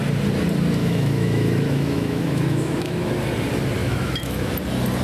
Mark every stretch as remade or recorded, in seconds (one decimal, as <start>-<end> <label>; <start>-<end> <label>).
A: 0.0-0.8 recorded; 0.8-3.1 remade; 3.1-3.8 recorded; 3.8-4.5 remade; 4.5-5.0 recorded